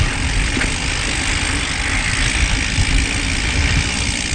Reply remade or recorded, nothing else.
recorded